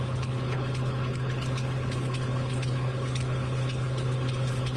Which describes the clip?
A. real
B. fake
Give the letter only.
B